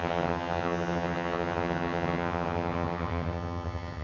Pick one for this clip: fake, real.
fake